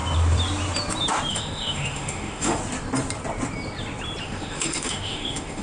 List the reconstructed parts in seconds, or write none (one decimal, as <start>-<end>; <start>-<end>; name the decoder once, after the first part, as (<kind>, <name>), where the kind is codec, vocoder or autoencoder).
1.3-2.6 (autoencoder, DAC-VAE); 4.2-5.6